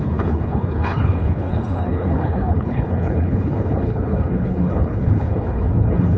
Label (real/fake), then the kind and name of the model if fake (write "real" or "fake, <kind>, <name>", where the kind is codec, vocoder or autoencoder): fake, codec, HILCodec